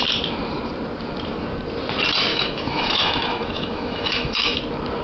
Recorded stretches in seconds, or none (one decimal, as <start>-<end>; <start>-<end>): 0.0-2.3; 4.6-5.0